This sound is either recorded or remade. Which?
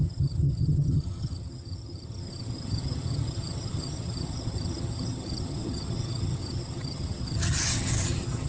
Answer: remade